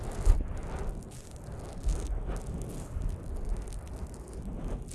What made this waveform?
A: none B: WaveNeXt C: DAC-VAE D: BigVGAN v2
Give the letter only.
A